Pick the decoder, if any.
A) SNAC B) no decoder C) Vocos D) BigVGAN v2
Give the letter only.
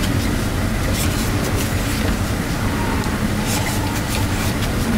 B